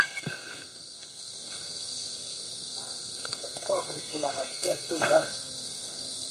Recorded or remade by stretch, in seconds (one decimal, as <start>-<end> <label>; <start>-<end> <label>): 0.0-6.3 remade